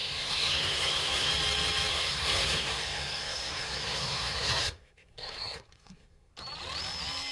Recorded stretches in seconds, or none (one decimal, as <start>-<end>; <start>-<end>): 1.3-1.9; 6.3-7.3